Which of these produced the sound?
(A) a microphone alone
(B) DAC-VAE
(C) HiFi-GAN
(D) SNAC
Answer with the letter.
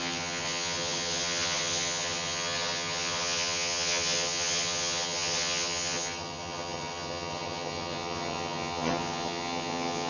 C